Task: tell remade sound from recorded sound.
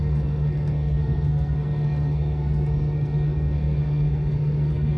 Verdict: remade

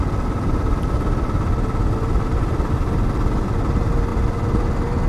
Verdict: recorded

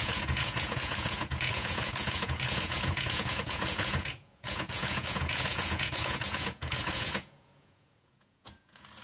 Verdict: remade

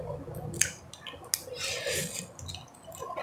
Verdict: recorded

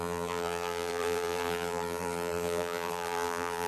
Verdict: remade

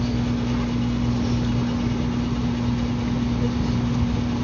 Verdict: recorded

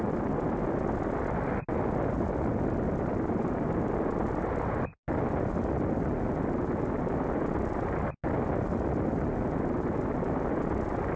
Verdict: recorded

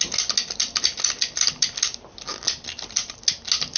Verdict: recorded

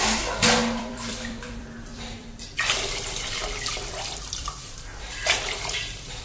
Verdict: remade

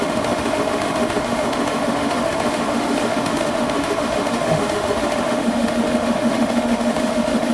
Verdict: remade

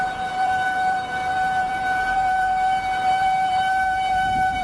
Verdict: remade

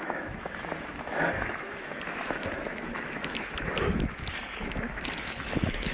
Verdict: remade